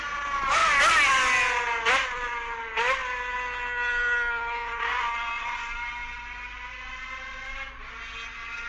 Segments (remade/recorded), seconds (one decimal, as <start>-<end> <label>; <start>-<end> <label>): 0.0-8.7 recorded